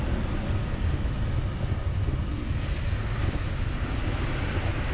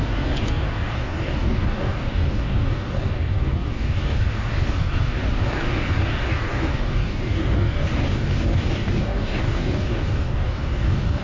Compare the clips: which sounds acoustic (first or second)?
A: first